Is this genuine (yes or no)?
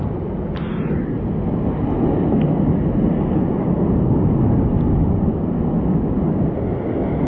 yes